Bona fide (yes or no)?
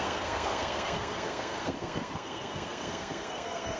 no